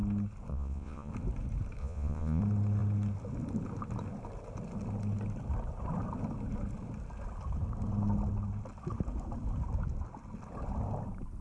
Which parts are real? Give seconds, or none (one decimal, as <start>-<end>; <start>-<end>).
0.0-0.5; 1.1-1.8; 2.4-11.4